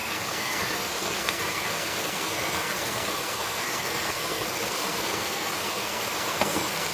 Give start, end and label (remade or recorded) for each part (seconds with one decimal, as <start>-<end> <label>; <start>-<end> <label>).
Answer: 0.0-6.9 remade